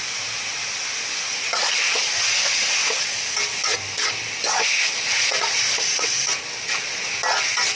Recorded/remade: recorded